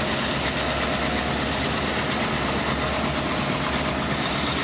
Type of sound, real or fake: real